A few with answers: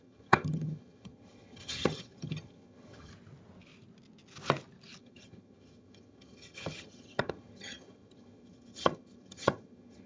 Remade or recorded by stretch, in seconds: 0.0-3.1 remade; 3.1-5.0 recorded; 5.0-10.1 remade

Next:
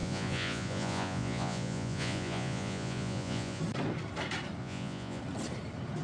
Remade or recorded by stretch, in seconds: 0.0-3.6 remade; 3.6-4.6 recorded; 4.6-5.2 remade; 5.2-6.0 recorded

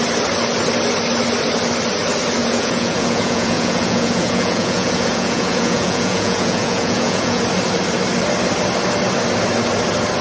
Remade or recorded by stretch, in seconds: 0.0-2.4 recorded; 2.4-7.4 remade; 7.4-10.2 recorded

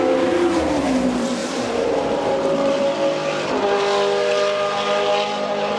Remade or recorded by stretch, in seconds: 0.0-1.4 recorded; 1.4-2.8 remade; 2.8-5.8 recorded